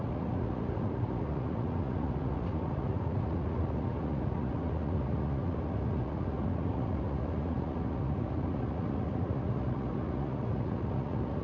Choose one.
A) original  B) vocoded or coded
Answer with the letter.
B